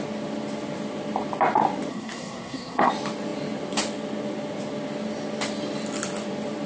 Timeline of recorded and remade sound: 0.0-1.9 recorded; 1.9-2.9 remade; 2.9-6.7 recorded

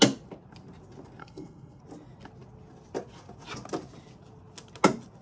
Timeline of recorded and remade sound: 0.0-1.2 recorded; 1.2-1.8 remade; 1.8-5.2 recorded

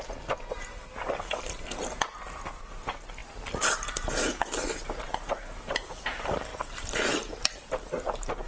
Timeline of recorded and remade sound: 0.0-8.5 recorded

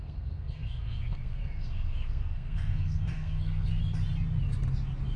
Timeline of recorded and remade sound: 0.0-3.8 remade; 3.8-5.2 recorded